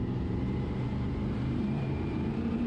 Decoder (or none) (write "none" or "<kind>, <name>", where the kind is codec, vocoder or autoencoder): vocoder, BigVGAN v2